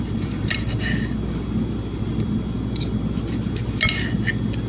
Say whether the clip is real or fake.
real